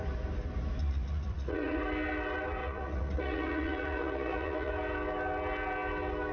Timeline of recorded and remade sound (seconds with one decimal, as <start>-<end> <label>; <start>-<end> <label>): 0.0-0.8 recorded; 0.8-1.8 remade; 1.8-2.6 recorded; 2.6-4.7 remade; 4.7-6.3 recorded